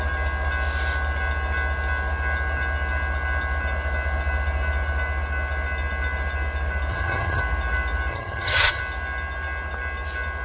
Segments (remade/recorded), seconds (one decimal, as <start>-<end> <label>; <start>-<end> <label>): 0.0-6.9 recorded; 6.9-7.4 remade; 7.4-8.1 recorded; 8.1-8.8 remade; 8.8-10.4 recorded